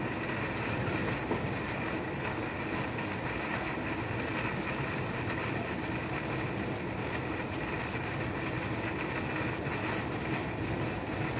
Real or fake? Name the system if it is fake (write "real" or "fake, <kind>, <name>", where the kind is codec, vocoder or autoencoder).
real